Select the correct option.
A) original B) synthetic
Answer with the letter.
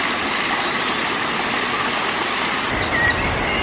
A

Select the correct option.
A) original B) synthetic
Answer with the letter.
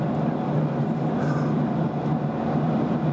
A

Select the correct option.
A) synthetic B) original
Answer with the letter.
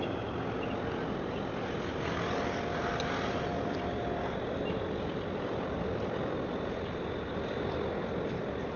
B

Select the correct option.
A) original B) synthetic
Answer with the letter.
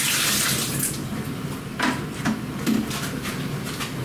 A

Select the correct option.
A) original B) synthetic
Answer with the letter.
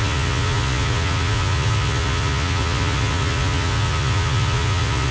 B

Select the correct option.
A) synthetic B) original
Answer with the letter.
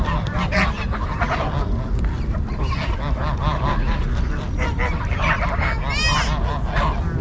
B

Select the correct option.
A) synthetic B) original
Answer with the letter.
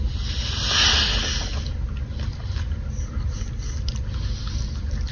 B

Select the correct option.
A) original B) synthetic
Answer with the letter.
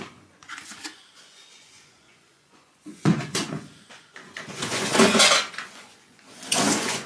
B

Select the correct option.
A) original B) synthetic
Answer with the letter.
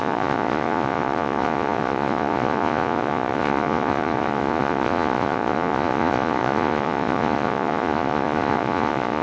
B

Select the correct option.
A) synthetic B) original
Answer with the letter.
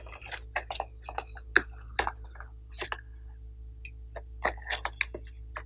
B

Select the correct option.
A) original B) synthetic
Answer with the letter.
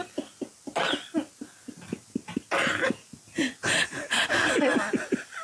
A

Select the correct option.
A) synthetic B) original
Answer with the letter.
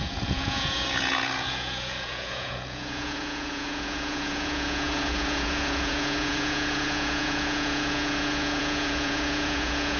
A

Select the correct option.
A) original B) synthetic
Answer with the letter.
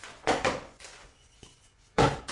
B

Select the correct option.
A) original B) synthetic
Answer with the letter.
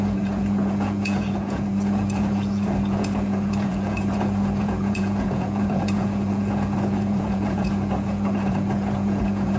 B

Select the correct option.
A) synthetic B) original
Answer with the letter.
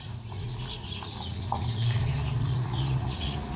A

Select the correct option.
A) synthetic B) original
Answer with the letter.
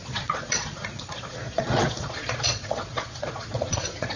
A